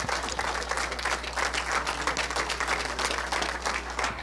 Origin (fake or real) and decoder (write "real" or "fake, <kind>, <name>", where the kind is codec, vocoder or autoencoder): real